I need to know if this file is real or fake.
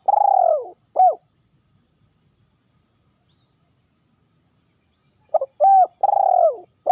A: real